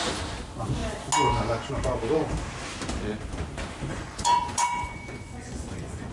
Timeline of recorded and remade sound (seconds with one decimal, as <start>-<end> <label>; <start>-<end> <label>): 0.0-3.9 recorded; 3.9-6.1 remade